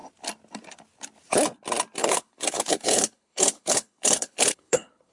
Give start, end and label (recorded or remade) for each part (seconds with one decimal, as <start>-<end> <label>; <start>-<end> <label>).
0.0-2.0 recorded; 2.0-5.1 remade